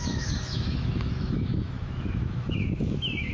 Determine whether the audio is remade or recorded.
remade